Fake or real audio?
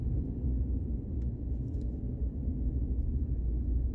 real